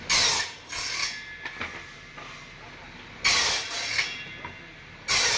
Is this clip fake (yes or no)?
no